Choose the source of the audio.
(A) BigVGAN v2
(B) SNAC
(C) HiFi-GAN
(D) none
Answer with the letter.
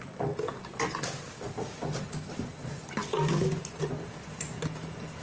D